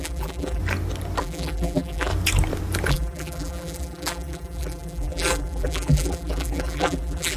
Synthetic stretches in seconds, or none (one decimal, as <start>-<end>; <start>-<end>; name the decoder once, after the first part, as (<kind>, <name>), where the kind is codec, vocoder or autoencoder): 0.0-0.6 (vocoder, BigVGAN v2); 1.2-2.1; 2.9-7.4